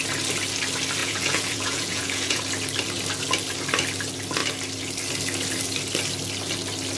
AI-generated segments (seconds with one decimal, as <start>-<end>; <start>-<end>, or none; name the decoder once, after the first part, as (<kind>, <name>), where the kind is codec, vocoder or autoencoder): 1.0-2.4 (vocoder, Vocos)